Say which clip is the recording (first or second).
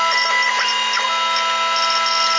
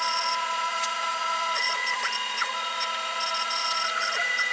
first